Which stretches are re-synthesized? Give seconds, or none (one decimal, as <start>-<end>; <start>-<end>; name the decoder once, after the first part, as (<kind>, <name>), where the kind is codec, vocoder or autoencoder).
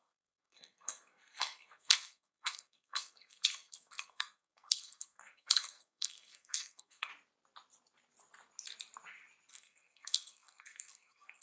0.0-7.1 (codec, SNAC); 9.5-11.4